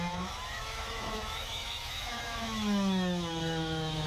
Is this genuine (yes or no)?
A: no